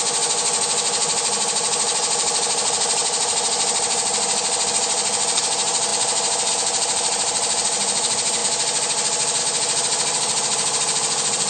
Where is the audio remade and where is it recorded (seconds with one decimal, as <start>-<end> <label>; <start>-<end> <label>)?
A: 0.0-11.5 recorded